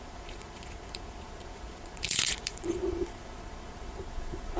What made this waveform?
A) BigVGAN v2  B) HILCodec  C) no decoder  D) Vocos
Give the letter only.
D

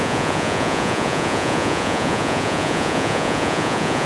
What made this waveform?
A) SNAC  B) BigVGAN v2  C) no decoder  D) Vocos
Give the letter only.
D